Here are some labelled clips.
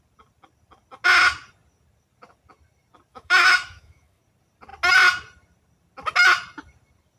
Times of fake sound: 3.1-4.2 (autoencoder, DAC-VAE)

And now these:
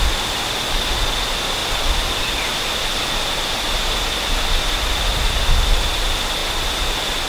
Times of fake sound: none

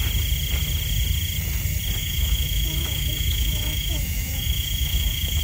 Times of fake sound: 2.0-5.4 (autoencoder, DAC-VAE)